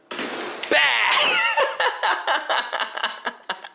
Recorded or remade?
recorded